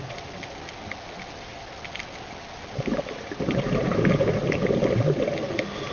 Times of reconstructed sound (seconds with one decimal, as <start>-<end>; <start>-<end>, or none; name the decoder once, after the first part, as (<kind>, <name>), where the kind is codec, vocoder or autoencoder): none